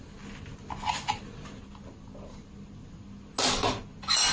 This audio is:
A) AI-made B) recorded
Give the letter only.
B